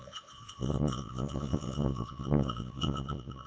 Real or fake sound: fake